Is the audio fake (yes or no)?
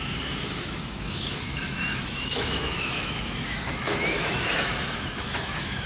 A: yes